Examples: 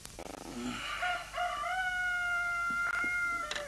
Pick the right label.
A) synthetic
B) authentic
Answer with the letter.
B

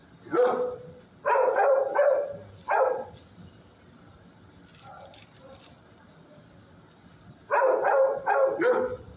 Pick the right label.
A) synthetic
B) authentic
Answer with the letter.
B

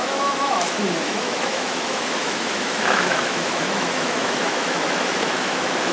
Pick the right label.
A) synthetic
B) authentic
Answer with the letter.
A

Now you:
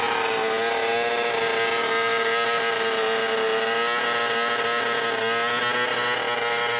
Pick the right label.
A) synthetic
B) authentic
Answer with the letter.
B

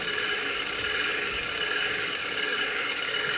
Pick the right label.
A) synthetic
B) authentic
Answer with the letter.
A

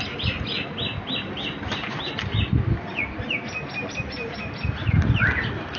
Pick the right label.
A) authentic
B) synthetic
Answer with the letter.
A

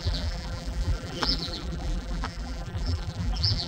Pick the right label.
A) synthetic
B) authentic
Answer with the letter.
A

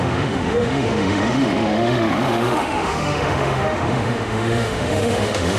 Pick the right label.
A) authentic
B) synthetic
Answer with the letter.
B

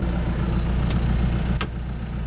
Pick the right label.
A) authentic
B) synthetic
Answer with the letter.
A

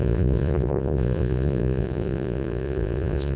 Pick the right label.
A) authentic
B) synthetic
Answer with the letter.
B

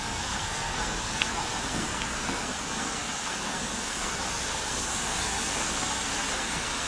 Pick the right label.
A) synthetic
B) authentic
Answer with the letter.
A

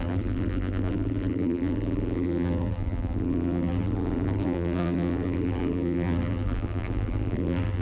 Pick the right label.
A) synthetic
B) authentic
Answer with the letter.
A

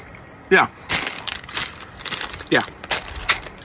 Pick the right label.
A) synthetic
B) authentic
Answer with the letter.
B